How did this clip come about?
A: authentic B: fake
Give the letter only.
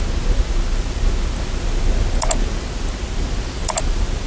A